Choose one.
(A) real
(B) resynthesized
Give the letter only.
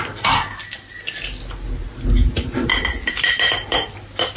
A